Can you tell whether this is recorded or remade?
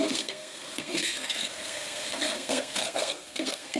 remade